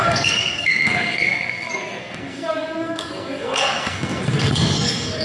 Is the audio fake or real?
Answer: fake